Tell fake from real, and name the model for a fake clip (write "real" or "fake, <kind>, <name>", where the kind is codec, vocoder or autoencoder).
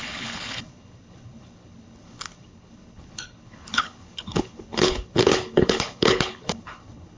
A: fake, codec, HILCodec